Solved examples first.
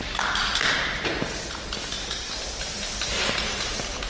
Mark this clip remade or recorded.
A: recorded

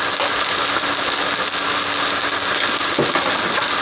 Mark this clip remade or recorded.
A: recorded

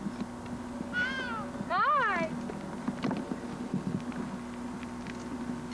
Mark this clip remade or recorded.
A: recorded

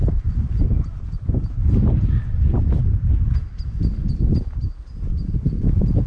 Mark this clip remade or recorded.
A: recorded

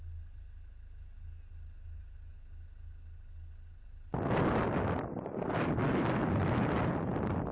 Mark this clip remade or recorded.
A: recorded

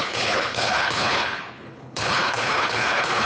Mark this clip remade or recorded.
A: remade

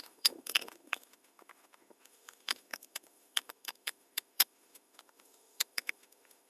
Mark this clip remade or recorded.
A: remade